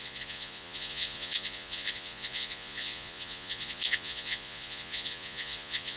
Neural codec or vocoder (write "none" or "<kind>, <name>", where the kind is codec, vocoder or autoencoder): vocoder, Vocos